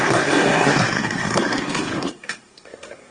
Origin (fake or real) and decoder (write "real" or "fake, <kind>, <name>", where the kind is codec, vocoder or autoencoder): fake, codec, SNAC